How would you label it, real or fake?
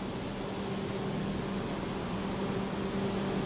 real